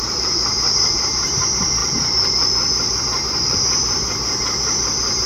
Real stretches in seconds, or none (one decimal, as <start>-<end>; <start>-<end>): 0.0-1.8; 3.0-5.3